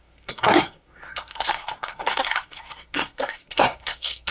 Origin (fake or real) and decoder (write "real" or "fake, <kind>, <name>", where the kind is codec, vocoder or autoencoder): fake, codec, SNAC